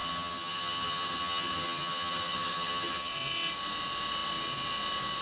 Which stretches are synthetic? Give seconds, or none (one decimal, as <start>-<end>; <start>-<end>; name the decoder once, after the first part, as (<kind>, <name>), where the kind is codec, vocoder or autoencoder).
0.0-3.1 (vocoder, HiFi-GAN)

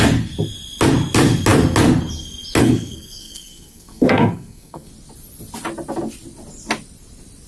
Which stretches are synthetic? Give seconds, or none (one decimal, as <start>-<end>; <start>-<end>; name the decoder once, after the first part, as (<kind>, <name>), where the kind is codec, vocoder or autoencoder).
2.6-4.9 (codec, SNAC)

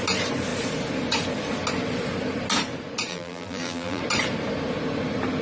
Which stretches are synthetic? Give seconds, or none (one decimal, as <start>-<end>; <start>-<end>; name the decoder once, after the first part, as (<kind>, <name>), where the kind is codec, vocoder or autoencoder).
3.1-4.0 (vocoder, BigVGAN v2)

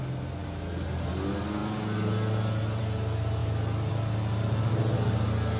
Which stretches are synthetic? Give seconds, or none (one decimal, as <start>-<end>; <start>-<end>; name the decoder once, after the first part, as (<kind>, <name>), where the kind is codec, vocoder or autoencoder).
none